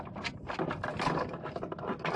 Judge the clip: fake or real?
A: real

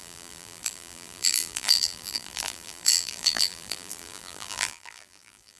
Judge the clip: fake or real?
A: fake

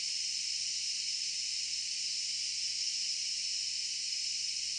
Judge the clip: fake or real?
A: real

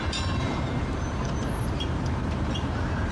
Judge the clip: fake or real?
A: fake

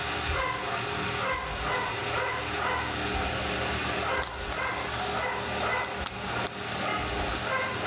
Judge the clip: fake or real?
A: real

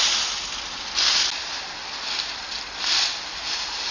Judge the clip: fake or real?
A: real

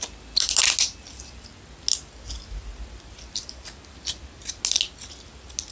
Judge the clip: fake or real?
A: real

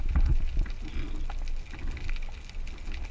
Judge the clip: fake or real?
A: real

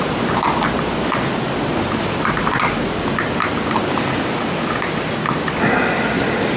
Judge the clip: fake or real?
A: real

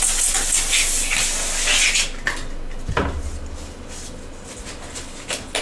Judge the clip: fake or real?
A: real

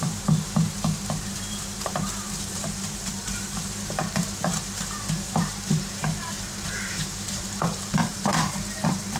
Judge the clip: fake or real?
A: fake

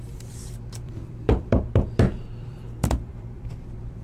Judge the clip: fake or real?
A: fake